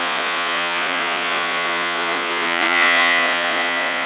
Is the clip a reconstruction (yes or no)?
yes